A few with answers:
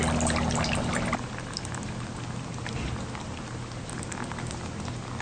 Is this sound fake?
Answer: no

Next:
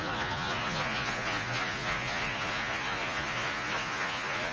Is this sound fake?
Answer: yes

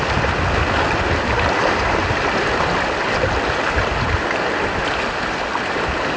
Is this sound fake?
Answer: no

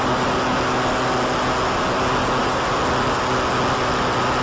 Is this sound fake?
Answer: no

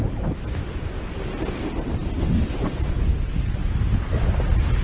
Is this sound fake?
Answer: no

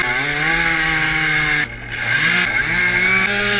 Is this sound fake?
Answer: no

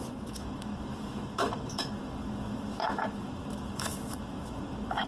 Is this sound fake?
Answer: yes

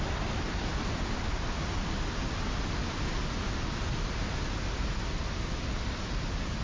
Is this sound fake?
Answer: no